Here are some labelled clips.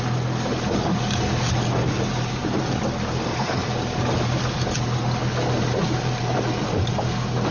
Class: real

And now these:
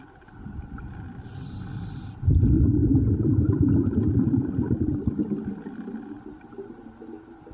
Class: real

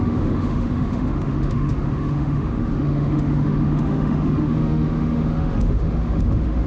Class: fake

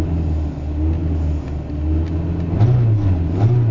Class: real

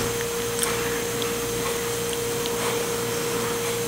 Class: real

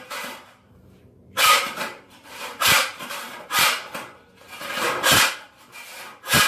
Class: fake